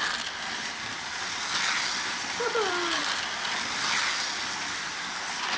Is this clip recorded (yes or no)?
yes